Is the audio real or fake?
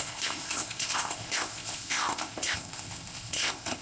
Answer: fake